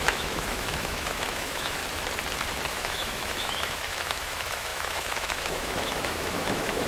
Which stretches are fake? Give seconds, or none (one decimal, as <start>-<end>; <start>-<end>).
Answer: 0.0-1.8; 2.7-6.9